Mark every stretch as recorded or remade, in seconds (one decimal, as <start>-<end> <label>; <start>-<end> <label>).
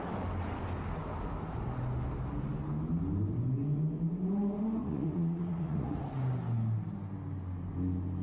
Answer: 0.0-4.8 recorded; 4.8-6.0 remade; 6.0-8.2 recorded